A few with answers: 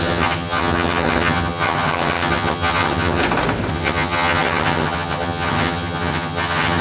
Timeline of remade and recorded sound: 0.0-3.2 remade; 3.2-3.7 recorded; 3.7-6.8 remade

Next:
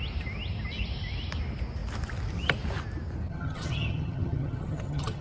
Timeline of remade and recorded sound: 0.0-3.3 recorded; 3.3-5.2 remade

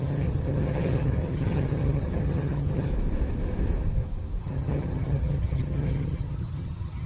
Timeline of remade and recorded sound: 0.0-2.9 remade; 2.9-4.4 recorded; 4.4-7.1 remade

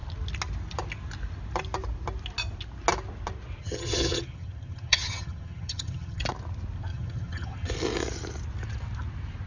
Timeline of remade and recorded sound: 0.0-3.6 recorded; 3.6-6.2 remade; 6.2-6.9 recorded; 6.9-7.7 remade; 7.7-9.5 recorded